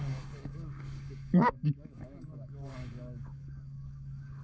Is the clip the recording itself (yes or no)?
no